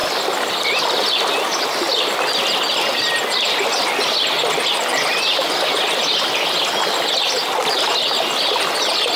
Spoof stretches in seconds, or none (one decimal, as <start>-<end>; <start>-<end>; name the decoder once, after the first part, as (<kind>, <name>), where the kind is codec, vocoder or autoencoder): none